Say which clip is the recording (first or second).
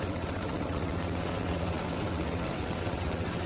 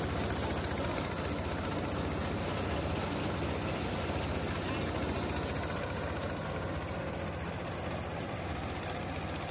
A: second